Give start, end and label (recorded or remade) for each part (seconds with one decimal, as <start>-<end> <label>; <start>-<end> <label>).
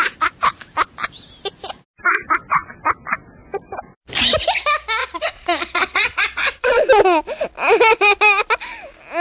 0.0-5.0 recorded; 5.0-6.9 remade; 6.9-9.2 recorded